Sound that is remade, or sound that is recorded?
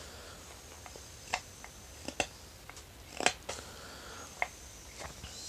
recorded